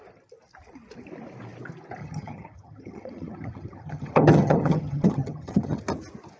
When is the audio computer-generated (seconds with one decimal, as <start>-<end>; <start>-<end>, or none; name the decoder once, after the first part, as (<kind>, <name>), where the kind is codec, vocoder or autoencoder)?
2.0-5.8 (vocoder, HiFi-GAN)